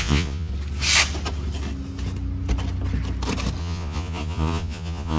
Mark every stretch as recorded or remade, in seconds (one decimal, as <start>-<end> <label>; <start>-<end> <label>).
0.0-0.5 remade; 0.5-3.6 recorded; 3.6-5.2 remade